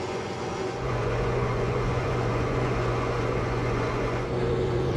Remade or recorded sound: remade